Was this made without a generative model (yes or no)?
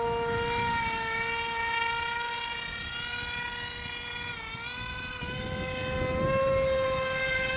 yes